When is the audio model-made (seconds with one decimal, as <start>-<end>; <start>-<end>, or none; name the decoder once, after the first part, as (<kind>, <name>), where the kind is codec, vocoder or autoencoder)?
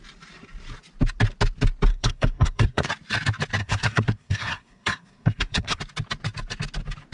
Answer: 1.9-2.9 (codec, SNAC); 3.6-5.8